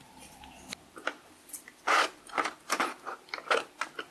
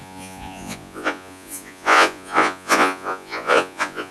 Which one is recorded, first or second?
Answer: first